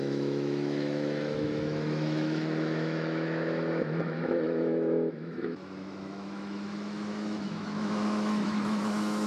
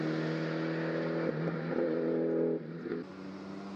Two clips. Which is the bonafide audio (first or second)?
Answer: second